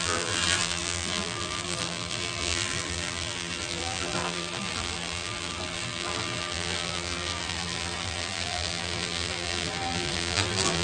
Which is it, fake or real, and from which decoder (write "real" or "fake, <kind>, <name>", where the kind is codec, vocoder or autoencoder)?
fake, vocoder, BigVGAN v2